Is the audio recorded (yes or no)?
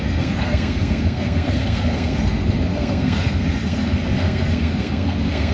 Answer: no